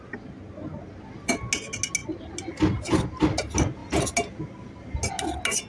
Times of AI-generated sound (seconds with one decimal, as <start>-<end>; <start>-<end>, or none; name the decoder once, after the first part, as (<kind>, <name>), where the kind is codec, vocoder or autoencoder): none